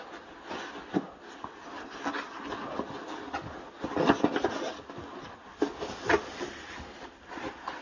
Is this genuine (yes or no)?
yes